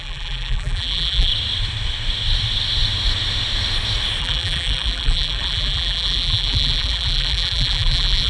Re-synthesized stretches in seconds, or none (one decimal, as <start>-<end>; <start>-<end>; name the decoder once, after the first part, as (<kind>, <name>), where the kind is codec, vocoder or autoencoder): 0.0-1.3 (vocoder, BigVGAN v2); 4.2-8.3